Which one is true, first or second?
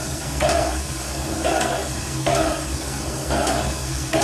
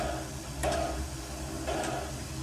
second